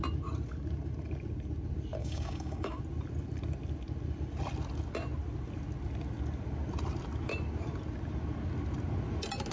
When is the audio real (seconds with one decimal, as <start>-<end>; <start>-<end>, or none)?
0.0-2.0; 2.8-9.5